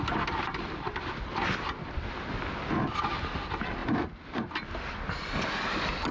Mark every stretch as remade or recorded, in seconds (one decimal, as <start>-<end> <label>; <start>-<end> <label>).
0.0-6.1 recorded